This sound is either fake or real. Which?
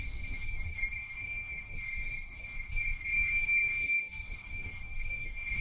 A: fake